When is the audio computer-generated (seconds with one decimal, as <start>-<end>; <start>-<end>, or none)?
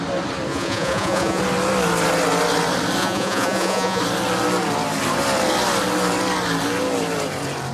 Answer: 0.5-1.4; 3.0-4.0